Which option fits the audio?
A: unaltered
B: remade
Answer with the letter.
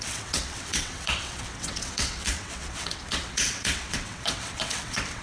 B